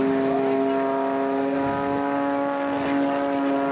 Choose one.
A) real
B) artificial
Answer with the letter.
A